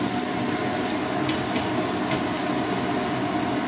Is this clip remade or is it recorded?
recorded